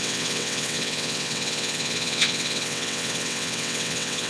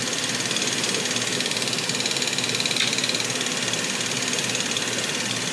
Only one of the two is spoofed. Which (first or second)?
first